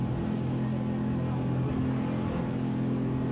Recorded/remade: recorded